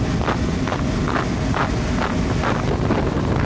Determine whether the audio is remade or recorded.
recorded